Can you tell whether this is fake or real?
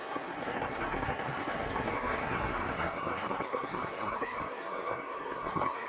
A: fake